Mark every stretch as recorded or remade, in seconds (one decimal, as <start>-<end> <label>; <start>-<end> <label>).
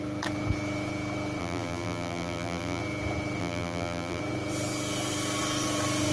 0.0-1.4 recorded; 1.4-2.8 remade; 2.8-3.4 recorded; 3.4-4.2 remade; 4.2-6.1 recorded